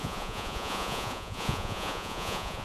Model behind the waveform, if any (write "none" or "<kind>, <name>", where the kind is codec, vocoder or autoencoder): vocoder, Vocos